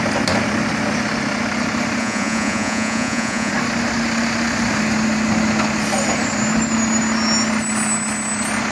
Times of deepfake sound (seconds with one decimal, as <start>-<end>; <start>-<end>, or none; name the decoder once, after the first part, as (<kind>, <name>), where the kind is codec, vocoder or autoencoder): 2.0-3.5 (vocoder, Vocos)